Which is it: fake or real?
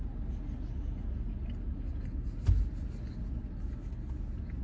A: real